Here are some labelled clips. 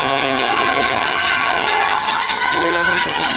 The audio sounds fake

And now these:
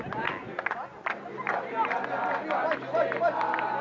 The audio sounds real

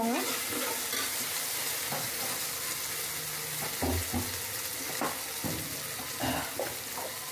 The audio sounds real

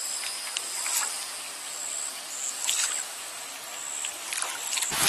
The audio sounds real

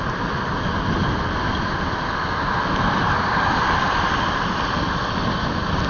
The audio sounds real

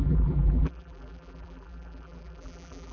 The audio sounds fake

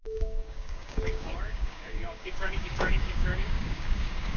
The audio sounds fake